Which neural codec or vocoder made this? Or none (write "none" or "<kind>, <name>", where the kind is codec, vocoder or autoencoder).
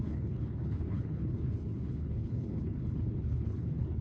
codec, HILCodec